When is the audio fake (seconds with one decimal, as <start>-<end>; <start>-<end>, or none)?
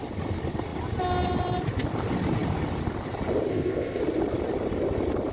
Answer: 3.5-4.0